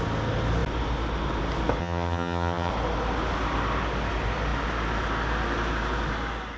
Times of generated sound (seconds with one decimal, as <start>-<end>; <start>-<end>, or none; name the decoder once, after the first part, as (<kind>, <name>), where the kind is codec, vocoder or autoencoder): 1.8-2.7 (vocoder, HiFi-GAN)